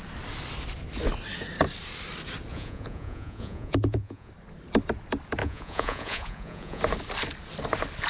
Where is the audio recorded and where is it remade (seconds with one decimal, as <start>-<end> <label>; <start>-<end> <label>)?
0.0-2.5 recorded; 2.5-4.3 remade; 4.3-5.4 recorded; 5.4-6.8 remade; 6.8-8.1 recorded